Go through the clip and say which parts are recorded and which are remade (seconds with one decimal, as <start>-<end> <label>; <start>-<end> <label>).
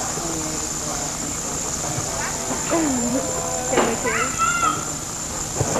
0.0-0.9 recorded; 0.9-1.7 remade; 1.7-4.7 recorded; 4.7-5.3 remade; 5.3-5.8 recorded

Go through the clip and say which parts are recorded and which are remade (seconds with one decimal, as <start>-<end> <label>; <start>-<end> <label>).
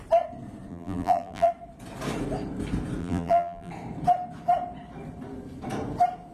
0.0-0.7 recorded; 0.7-1.5 remade; 1.5-3.0 recorded; 3.0-3.7 remade; 3.7-6.3 recorded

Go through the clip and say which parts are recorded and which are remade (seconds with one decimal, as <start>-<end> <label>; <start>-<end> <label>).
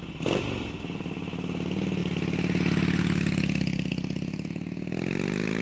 0.0-5.6 recorded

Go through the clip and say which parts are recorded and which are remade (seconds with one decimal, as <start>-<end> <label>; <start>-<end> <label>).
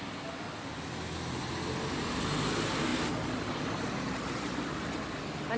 0.0-5.6 recorded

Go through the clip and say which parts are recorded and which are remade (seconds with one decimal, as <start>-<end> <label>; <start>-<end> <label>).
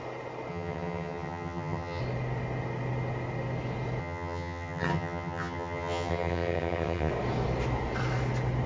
0.0-0.5 recorded; 0.5-2.0 remade; 2.0-4.0 recorded; 4.0-7.1 remade; 7.1-8.7 recorded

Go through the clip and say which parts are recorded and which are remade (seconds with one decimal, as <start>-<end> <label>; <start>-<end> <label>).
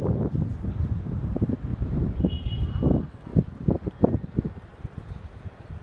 0.0-1.7 recorded; 1.7-2.2 remade; 2.2-5.8 recorded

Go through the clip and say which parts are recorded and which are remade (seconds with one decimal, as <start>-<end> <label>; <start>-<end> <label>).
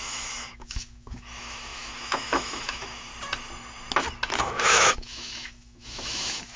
0.0-3.1 remade; 3.1-4.4 recorded; 4.4-6.6 remade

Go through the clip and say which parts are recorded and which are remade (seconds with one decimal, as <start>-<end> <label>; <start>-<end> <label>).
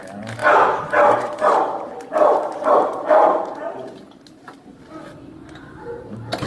0.0-0.4 recorded; 0.4-2.7 remade; 2.7-6.5 recorded